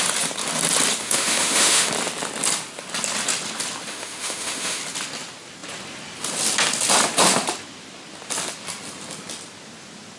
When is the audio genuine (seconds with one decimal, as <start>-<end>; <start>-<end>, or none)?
0.0-1.0; 1.9-3.9; 4.8-10.2